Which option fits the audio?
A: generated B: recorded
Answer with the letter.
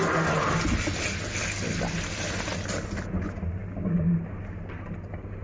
B